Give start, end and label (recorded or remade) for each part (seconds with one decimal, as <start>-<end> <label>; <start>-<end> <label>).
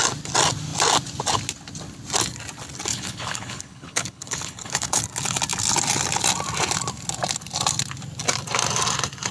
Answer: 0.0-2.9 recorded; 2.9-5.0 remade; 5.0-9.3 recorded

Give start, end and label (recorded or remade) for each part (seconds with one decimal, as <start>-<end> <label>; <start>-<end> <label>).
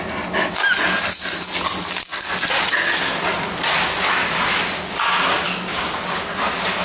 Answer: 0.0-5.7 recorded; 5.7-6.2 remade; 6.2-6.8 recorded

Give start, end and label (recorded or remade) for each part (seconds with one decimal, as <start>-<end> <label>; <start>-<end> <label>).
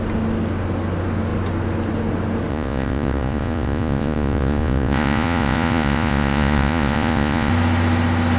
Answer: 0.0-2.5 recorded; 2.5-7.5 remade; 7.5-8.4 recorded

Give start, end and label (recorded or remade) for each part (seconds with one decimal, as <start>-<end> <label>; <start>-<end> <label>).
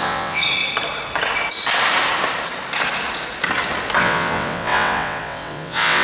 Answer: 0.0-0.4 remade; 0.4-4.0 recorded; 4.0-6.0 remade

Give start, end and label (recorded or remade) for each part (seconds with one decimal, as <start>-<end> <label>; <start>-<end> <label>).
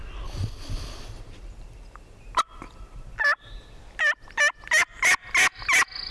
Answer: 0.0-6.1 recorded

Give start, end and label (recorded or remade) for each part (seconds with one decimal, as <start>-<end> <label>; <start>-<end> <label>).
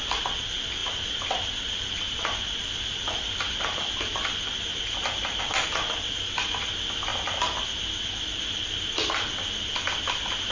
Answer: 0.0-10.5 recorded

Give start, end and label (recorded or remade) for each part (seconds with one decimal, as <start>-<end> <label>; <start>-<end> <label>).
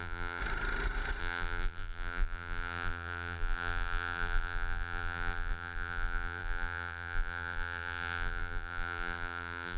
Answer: 0.0-0.4 remade; 0.4-1.2 recorded; 1.2-9.8 remade